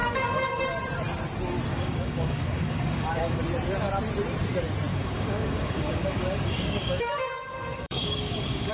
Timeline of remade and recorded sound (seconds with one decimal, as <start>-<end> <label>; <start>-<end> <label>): 0.0-0.6 remade; 0.6-1.7 recorded; 1.7-3.4 remade; 3.4-4.9 recorded; 4.9-8.7 remade